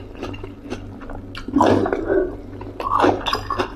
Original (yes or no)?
yes